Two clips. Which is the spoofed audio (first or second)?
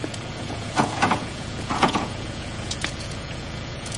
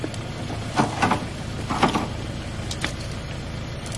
first